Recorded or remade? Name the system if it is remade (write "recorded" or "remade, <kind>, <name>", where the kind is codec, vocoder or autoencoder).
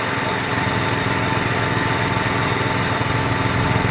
recorded